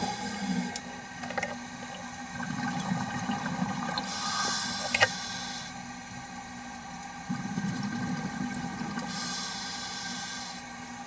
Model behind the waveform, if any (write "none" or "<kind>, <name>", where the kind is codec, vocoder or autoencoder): none